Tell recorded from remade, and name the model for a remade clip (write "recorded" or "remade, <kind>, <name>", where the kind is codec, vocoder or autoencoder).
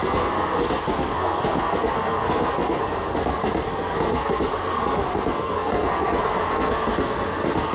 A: remade, codec, SNAC